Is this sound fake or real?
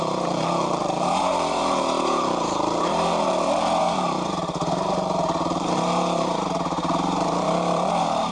fake